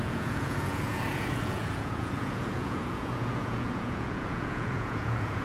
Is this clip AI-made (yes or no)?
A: yes